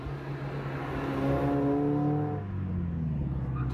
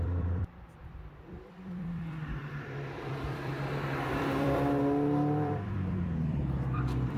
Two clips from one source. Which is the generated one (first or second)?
second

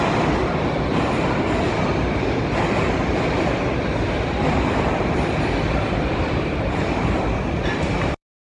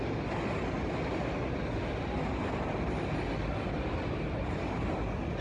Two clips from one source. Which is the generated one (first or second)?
first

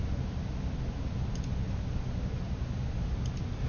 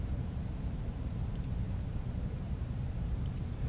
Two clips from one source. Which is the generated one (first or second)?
second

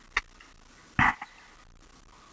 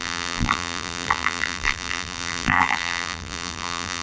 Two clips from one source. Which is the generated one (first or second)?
second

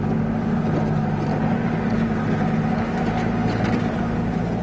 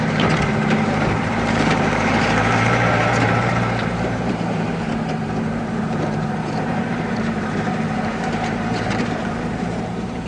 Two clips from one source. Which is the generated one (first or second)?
second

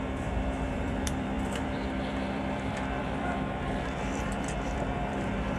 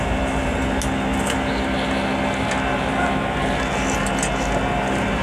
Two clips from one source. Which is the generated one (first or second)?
first